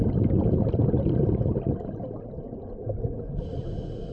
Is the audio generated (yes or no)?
no